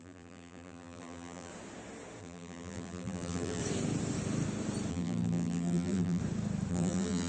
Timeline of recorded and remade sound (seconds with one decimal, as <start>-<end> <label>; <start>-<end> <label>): 0.0-1.5 remade; 1.5-2.2 recorded; 2.2-3.6 remade; 3.6-4.9 recorded; 4.9-6.2 remade; 6.2-6.7 recorded; 6.7-7.3 remade